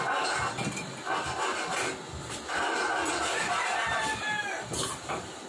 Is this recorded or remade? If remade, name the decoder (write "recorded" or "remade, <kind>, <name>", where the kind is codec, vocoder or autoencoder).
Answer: recorded